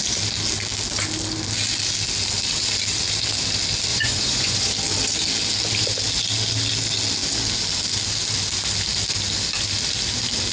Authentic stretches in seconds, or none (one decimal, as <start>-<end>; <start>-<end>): 0.0-3.9; 4.7-10.5